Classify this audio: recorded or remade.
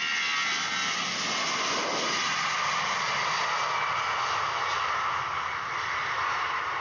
recorded